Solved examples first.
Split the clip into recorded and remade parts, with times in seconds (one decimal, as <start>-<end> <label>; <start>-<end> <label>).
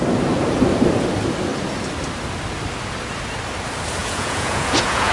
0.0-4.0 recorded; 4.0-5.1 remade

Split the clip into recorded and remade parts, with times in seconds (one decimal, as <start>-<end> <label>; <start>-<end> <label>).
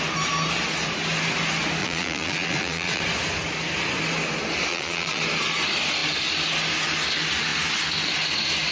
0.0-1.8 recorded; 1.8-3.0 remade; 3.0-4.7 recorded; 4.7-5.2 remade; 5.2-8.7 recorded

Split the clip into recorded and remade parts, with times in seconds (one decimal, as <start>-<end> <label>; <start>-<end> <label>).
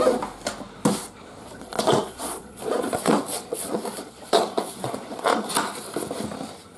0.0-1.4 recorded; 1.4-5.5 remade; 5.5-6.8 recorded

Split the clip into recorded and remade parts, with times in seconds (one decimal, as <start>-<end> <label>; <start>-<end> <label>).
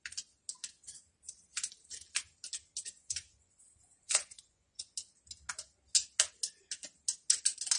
0.0-2.8 recorded; 2.8-4.9 remade; 4.9-7.8 recorded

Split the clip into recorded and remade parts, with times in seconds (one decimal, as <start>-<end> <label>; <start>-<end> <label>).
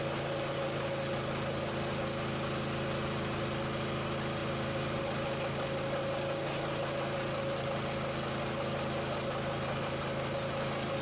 0.0-11.0 recorded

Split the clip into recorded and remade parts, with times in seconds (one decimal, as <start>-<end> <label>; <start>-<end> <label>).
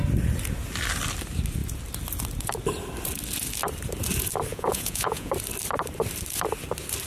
0.0-4.5 recorded; 4.5-5.3 remade; 5.3-7.1 recorded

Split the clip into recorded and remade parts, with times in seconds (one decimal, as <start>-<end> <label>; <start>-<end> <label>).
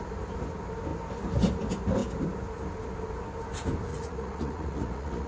0.0-3.9 recorded; 3.9-5.3 remade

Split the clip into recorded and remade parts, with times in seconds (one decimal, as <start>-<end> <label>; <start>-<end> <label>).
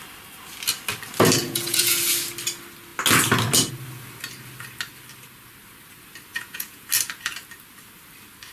0.0-1.4 recorded; 1.4-2.0 remade; 2.0-6.3 recorded; 6.3-6.9 remade; 6.9-8.5 recorded